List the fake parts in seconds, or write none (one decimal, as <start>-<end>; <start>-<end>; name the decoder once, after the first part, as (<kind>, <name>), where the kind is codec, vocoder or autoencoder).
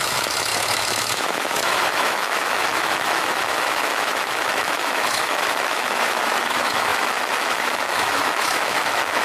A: 0.0-9.2 (autoencoder, DAC-VAE)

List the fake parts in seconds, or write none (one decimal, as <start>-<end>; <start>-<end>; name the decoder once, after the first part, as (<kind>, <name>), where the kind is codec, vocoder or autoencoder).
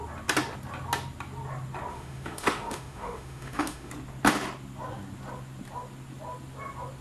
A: 1.9-3.9 (autoencoder, DAC-VAE)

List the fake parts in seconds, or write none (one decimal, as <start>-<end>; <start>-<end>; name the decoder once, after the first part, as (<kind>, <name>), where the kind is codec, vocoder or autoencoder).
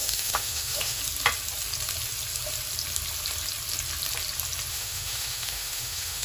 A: 0.0-1.0 (autoencoder, DAC-VAE); 4.7-6.2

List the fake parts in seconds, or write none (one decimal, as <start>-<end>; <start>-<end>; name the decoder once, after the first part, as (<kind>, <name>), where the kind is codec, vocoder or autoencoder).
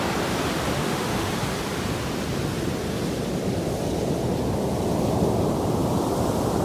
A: 0.7-1.3 (autoencoder, DAC-VAE)